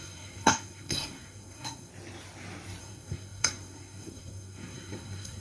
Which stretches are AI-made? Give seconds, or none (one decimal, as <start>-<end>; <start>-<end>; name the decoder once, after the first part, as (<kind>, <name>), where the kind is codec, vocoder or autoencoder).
0.0-1.9 (codec, SNAC); 2.8-5.4

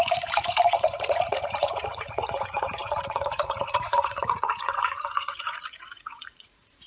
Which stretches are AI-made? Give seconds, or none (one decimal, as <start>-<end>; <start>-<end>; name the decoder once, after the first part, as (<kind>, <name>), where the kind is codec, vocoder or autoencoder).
0.0-6.9 (vocoder, Vocos)

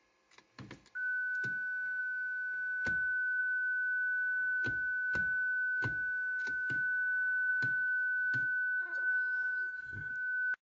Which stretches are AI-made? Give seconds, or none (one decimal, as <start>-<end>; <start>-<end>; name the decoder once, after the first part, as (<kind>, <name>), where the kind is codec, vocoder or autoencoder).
8.8-10.1 (codec, SNAC)

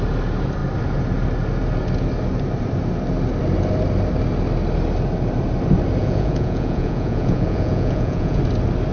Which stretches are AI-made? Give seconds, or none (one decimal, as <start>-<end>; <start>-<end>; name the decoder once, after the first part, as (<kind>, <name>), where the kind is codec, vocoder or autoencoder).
6.0-8.4 (vocoder, Vocos)